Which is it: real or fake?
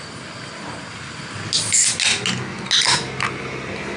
real